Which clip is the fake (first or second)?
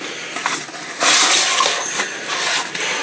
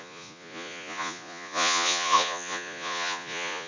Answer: second